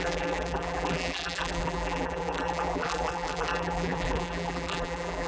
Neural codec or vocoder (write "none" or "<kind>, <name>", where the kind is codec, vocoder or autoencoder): vocoder, BigVGAN v2